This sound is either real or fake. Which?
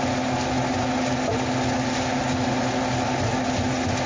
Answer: real